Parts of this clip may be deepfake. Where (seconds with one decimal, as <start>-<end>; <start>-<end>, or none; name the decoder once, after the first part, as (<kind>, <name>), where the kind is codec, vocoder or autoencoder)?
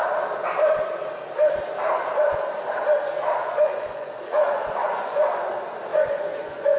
3.2-5.5 (vocoder, Vocos); 5.9-6.8